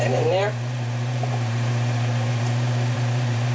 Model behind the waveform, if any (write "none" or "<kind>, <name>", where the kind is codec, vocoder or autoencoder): vocoder, BigVGAN v2